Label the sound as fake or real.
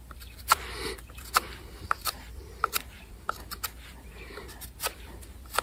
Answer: fake